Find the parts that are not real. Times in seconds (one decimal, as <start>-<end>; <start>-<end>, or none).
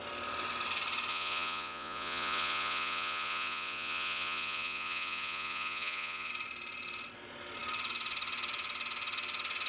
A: 1.1-6.3